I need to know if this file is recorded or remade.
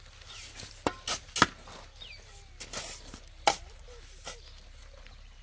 recorded